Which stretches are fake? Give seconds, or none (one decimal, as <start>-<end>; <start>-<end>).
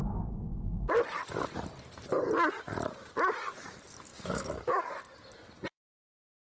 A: 4.1-4.8